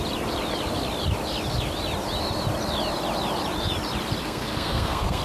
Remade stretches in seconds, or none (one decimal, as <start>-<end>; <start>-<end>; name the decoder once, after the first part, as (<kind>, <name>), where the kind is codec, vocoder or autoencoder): 4.2-5.2 (codec, SNAC)